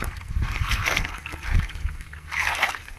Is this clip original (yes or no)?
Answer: no